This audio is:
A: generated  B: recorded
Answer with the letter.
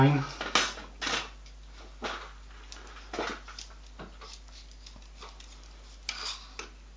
B